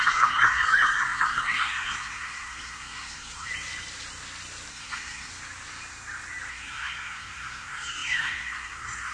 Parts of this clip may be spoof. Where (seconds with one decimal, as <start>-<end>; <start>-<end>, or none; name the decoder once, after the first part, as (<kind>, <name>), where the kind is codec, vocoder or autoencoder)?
0.0-3.5 (codec, SNAC); 4.7-5.3; 6.5-9.1